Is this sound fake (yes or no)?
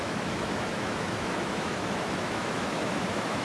yes